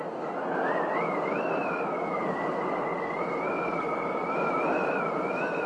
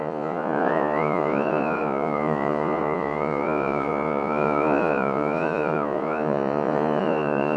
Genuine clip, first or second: first